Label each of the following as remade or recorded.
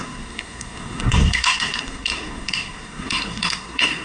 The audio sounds remade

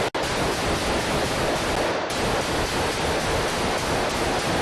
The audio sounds recorded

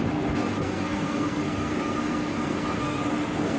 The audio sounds remade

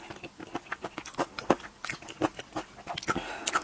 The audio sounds recorded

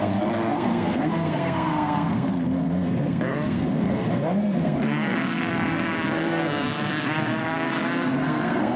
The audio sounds remade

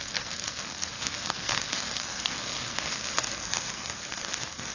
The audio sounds remade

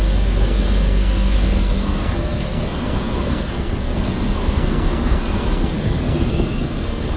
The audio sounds remade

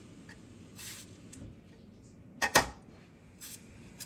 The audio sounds recorded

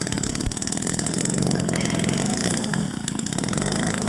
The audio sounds remade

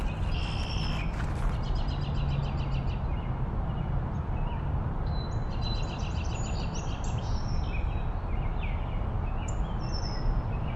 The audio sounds recorded